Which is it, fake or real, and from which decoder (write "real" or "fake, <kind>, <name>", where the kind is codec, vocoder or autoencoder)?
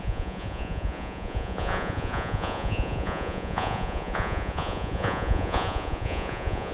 fake, vocoder, Vocos